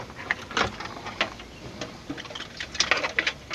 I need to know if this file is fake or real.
real